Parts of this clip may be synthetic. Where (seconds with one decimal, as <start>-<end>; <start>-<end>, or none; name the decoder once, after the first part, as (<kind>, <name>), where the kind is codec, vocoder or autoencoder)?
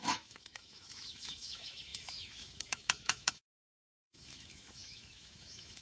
0.0-5.8 (autoencoder, DAC-VAE)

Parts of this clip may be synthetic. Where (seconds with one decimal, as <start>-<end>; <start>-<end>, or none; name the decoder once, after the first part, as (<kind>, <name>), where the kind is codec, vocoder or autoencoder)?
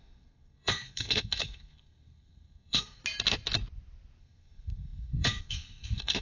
0.0-3.0 (codec, SNAC); 4.2-6.2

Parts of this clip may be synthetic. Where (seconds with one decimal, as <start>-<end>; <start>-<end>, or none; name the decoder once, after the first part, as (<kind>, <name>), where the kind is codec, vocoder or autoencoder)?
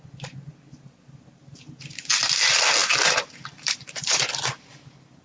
2.8-4.7 (vocoder, BigVGAN v2)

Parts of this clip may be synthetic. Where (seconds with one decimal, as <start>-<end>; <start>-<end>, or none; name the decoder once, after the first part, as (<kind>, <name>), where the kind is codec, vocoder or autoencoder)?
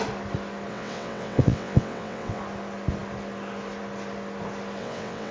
0.7-2.4 (vocoder, WaveNeXt); 4.8-5.3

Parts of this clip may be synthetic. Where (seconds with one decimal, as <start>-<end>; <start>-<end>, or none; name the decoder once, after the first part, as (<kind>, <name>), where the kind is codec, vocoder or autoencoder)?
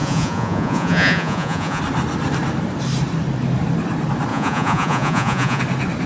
0.0-1.8 (vocoder, Vocos); 4.3-5.6